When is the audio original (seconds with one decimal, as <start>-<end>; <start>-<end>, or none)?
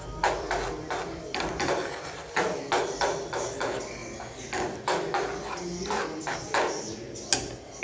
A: 0.0-7.8